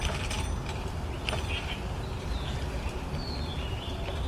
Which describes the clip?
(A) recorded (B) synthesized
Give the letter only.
A